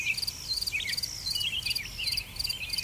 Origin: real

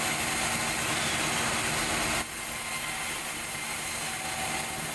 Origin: real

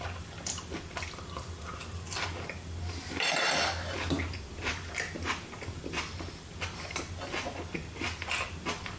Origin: real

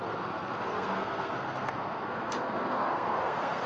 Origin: fake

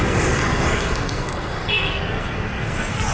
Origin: fake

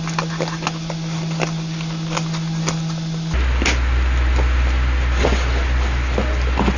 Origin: real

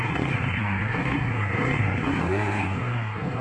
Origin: fake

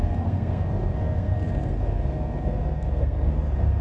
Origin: fake